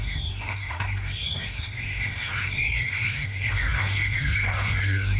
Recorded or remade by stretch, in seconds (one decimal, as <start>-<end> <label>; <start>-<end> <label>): 0.0-5.2 remade